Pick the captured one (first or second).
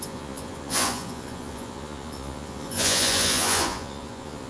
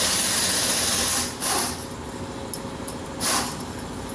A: second